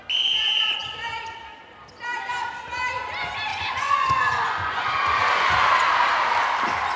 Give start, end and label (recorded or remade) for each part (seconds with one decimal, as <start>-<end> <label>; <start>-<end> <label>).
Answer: 0.0-3.5 recorded; 3.5-5.6 remade; 5.6-7.0 recorded

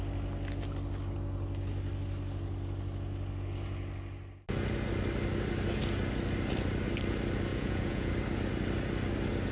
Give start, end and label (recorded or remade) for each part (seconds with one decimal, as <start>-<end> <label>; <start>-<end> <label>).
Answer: 0.0-7.5 recorded; 7.5-8.1 remade; 8.1-9.5 recorded

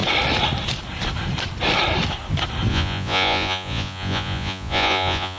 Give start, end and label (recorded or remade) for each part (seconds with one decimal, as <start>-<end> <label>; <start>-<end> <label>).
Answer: 0.0-2.7 recorded; 2.7-5.4 remade

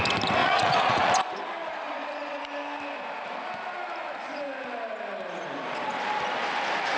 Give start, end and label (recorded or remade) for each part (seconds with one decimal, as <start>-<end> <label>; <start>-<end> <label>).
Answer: 0.0-0.4 recorded; 0.4-1.1 remade; 1.1-1.6 recorded; 1.6-2.4 remade; 2.4-7.0 recorded